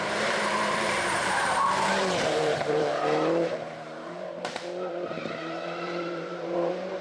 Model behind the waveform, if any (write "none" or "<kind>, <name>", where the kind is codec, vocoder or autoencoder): vocoder, BigVGAN v2